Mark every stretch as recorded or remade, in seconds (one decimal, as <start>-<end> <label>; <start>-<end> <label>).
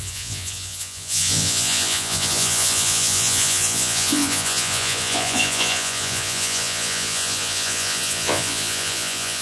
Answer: 0.0-9.4 remade